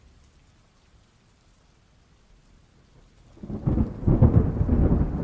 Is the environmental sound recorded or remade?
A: recorded